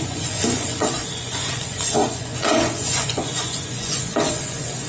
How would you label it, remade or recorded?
remade